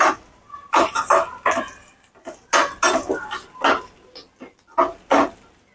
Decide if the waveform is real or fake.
real